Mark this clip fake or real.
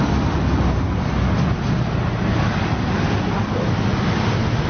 real